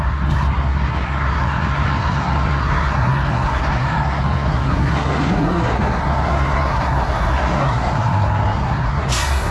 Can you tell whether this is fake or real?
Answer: fake